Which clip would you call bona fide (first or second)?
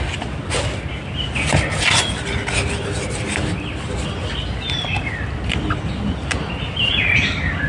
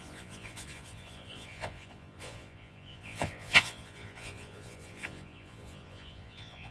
first